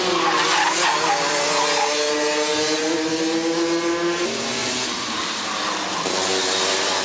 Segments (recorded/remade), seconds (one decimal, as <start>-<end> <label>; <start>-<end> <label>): 0.0-4.6 recorded; 4.6-6.6 remade; 6.6-7.0 recorded